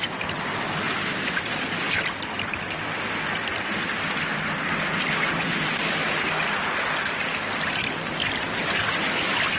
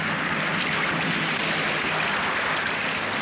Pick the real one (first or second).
second